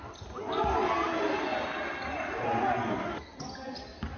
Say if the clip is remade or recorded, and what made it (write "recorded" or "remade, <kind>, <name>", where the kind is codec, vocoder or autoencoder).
recorded